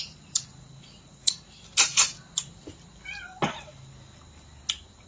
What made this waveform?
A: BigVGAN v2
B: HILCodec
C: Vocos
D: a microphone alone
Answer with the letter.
D